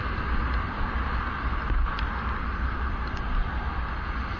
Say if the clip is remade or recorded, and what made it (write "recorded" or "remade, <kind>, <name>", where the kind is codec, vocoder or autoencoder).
recorded